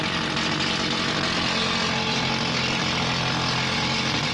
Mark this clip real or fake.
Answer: real